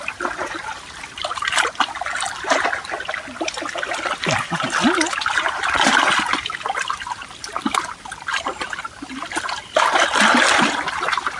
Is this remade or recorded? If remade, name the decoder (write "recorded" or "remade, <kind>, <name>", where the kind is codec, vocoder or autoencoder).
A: recorded